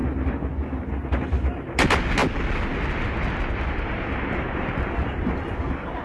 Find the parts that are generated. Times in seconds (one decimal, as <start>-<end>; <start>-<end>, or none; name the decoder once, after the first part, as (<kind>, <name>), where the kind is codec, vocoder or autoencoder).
none